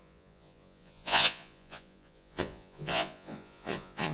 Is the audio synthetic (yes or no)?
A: yes